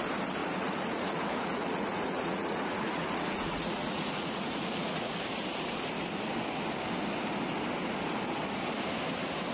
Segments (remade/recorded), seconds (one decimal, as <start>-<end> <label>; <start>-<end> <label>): 0.0-0.4 recorded; 0.4-5.1 remade; 5.1-9.5 recorded